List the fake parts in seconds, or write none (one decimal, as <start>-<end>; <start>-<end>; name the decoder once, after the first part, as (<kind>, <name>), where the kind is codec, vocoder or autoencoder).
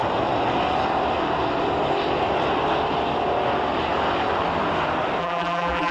5.2-5.9 (vocoder, BigVGAN v2)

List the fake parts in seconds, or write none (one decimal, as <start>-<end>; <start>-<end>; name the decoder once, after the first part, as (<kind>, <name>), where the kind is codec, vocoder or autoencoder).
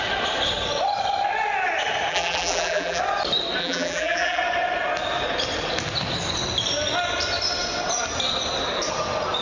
2.1-3.0 (vocoder, BigVGAN v2); 3.6-4.4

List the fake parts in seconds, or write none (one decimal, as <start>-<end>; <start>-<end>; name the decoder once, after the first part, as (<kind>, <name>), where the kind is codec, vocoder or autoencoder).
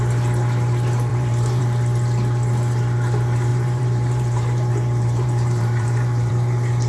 1.1-1.6 (vocoder, BigVGAN v2); 3.5-6.3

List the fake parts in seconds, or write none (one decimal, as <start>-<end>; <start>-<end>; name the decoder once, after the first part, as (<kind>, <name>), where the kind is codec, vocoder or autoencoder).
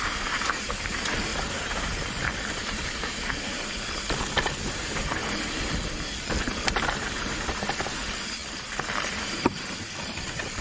0.0-5.2 (vocoder, BigVGAN v2); 6.4-10.6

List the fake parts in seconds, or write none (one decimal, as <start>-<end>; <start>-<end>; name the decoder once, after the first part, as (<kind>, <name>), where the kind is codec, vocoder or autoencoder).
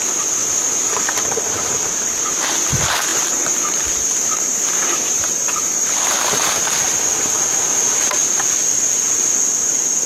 3.1-6.6 (vocoder, BigVGAN v2)